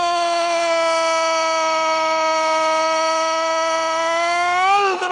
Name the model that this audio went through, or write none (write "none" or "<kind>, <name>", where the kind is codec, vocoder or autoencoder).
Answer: autoencoder, DAC-VAE